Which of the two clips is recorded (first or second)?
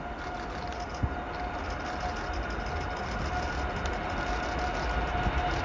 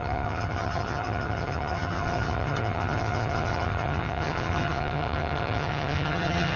first